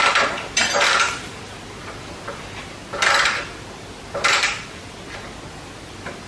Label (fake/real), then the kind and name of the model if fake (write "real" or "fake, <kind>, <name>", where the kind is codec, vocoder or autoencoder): real